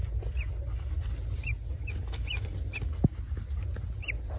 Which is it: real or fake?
real